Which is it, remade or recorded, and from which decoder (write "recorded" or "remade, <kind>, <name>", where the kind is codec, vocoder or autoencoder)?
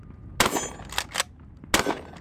recorded